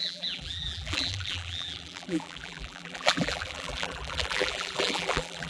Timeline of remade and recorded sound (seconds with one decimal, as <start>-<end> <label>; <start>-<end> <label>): 0.0-5.5 remade